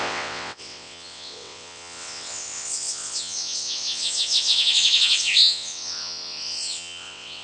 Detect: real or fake fake